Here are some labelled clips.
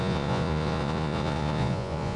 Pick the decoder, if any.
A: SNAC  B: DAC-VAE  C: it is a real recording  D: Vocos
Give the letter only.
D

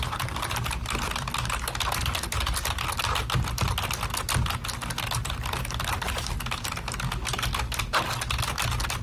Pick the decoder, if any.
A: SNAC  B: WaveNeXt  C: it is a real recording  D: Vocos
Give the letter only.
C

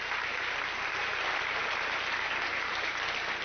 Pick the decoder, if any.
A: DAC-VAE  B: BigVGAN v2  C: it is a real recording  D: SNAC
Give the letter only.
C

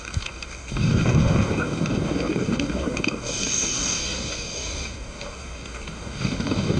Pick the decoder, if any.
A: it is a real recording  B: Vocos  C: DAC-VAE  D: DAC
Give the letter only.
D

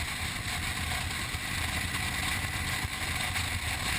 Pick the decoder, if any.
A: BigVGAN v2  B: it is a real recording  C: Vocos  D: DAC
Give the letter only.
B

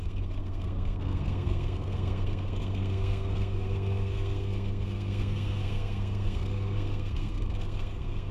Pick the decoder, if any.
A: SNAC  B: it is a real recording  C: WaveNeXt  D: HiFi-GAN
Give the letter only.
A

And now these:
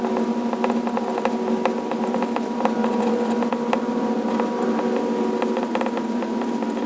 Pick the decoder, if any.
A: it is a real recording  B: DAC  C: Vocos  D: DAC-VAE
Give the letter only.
A